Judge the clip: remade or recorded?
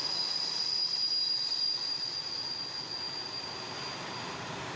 recorded